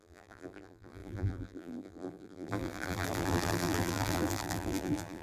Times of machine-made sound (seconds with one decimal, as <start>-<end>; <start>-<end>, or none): 0.0-5.2